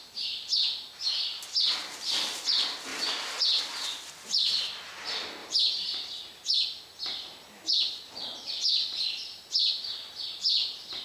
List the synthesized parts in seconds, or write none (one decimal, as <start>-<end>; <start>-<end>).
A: 2.9-3.6; 5.4-6.1